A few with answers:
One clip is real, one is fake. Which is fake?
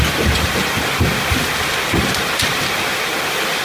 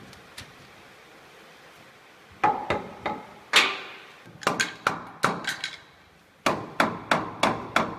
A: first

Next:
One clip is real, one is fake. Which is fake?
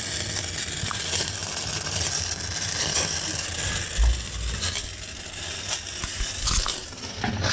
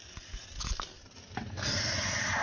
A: second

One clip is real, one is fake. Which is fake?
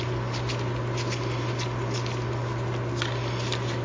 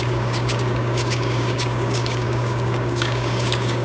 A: second